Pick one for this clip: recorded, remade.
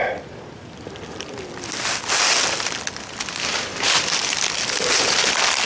recorded